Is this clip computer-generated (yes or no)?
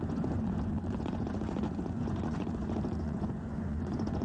yes